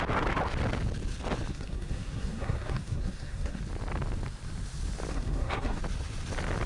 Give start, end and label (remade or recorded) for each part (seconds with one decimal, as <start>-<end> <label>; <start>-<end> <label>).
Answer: 0.0-1.5 recorded; 1.5-3.6 remade; 3.6-5.1 recorded; 5.1-5.8 remade; 5.8-6.7 recorded